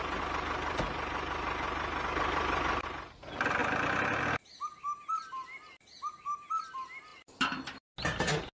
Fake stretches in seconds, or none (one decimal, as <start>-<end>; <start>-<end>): 7.1-7.9